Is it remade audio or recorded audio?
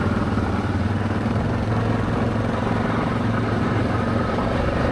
remade